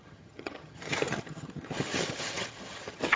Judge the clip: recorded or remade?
remade